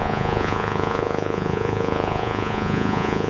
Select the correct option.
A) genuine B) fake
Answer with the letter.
B